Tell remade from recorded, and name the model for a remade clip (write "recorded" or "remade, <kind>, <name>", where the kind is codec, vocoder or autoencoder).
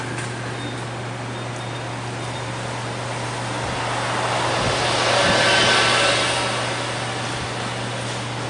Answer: recorded